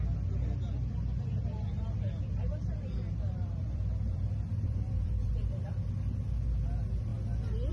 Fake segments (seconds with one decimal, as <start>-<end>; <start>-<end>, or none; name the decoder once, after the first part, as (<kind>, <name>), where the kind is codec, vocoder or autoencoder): 2.5-5.7 (vocoder, BigVGAN v2)